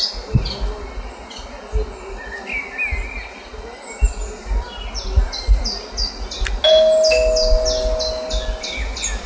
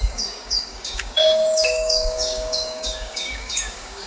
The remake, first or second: second